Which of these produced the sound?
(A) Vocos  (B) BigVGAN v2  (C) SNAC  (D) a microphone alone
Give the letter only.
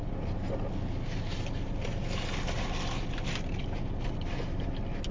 D